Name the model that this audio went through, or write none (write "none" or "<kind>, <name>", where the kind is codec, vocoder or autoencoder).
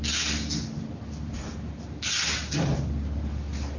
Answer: none